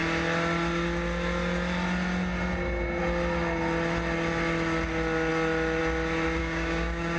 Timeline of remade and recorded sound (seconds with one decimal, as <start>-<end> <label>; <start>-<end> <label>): 0.0-6.4 recorded; 6.4-7.2 remade